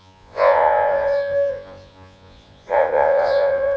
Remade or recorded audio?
remade